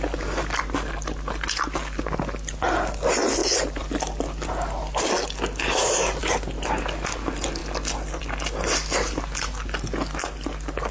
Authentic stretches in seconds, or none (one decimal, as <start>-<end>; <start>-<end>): 0.0-10.9